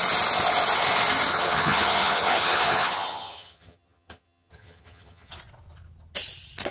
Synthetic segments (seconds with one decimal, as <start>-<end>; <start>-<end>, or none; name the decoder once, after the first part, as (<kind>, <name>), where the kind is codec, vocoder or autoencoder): 1.3-5.3 (vocoder, HiFi-GAN)